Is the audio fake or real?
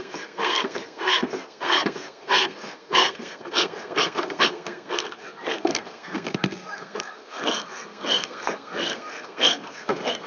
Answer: fake